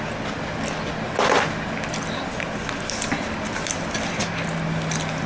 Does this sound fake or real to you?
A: real